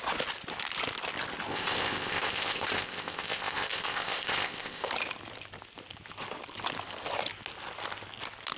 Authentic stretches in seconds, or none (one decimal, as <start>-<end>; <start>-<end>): 0.0-1.5; 4.9-8.6